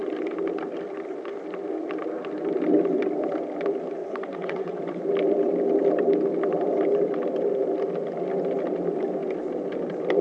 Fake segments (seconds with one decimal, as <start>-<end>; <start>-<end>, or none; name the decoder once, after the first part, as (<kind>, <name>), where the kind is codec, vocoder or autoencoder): 4.0-4.8 (vocoder, WaveNeXt)

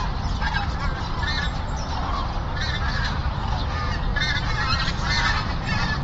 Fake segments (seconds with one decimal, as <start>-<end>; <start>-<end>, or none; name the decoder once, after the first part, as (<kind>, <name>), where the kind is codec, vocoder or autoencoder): none

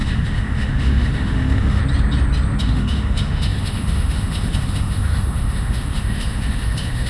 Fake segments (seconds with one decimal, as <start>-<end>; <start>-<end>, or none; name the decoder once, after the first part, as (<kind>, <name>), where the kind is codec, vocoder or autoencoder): 0.0-1.8 (autoencoder, DAC-VAE); 2.6-7.1

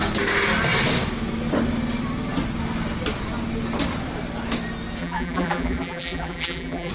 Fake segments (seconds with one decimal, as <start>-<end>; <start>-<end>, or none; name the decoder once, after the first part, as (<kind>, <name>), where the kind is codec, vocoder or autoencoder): 5.0-6.9 (vocoder, BigVGAN v2)

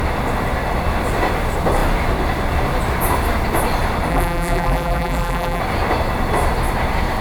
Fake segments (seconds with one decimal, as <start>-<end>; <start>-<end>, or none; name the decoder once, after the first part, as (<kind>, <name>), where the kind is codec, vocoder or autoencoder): 4.1-5.6 (vocoder, BigVGAN v2)

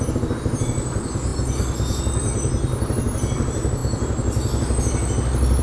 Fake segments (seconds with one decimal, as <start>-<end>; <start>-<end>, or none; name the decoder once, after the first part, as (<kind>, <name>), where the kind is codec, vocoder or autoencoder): none

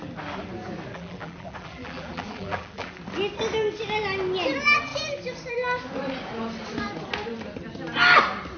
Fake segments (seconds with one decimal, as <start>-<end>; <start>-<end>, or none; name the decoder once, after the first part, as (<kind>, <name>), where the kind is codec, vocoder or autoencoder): 0.9-3.0 (vocoder, BigVGAN v2)